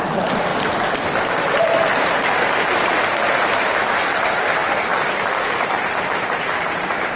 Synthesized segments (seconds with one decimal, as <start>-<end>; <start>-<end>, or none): 0.0-0.5; 1.2-7.2

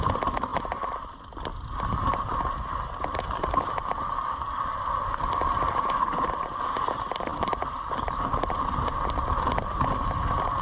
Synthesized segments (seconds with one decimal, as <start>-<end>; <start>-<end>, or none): 0.0-1.5; 2.0-7.3; 8.0-10.6

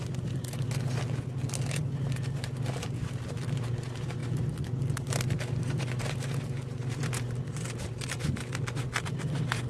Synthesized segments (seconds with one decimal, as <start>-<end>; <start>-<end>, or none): 4.2-6.0